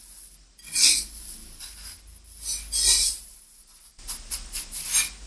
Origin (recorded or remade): recorded